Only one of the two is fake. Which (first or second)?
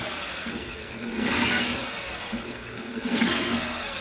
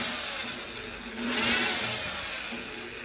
first